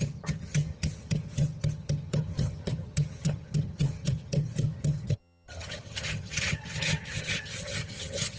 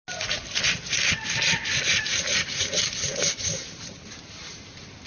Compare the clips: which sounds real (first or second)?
second